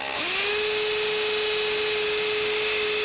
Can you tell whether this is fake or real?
real